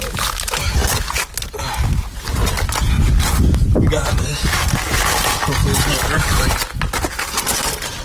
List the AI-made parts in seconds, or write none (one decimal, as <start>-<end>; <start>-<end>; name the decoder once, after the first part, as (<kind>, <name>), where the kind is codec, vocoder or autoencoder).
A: none